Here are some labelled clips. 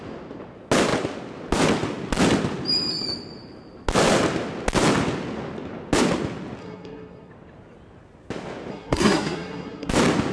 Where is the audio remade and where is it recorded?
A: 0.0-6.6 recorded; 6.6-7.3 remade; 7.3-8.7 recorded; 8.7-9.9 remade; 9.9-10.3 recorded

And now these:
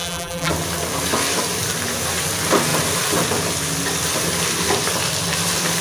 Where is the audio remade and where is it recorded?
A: 0.0-0.5 remade; 0.5-5.8 recorded

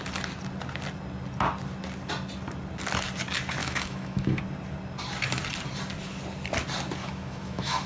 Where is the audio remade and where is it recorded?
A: 0.0-3.6 recorded; 3.6-4.4 remade; 4.4-7.0 recorded; 7.0-7.9 remade

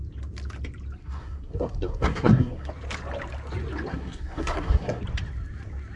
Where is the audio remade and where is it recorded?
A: 0.0-1.0 recorded; 1.0-2.7 remade; 2.7-3.9 recorded; 3.9-5.0 remade; 5.0-6.0 recorded

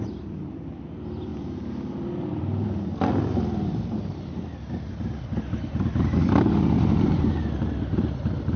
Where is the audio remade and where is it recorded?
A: 0.0-8.6 remade

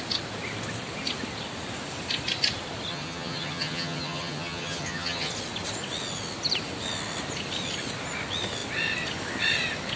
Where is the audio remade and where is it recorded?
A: 0.0-2.9 recorded; 2.9-5.3 remade; 5.3-10.0 recorded